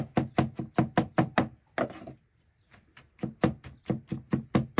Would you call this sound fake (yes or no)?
no